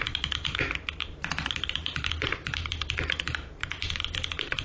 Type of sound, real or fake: fake